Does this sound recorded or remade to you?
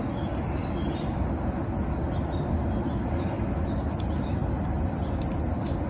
recorded